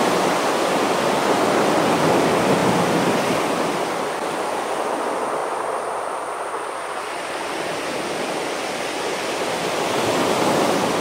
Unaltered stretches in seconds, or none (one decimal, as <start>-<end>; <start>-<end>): 0.0-11.0